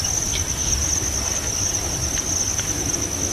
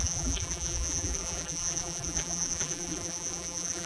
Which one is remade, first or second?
second